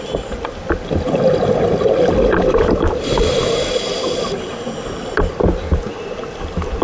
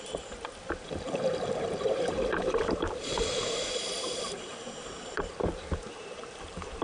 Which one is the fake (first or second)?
second